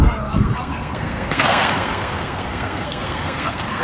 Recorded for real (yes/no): no